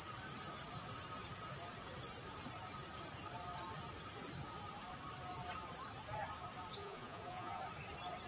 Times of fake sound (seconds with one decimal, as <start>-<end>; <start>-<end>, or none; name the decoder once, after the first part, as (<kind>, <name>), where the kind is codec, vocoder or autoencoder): 6.8-7.6 (vocoder, Vocos)